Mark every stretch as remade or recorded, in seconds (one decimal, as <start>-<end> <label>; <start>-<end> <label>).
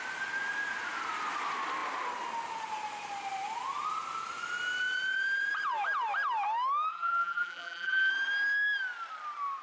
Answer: 0.0-6.9 recorded; 6.9-8.1 remade; 8.1-9.6 recorded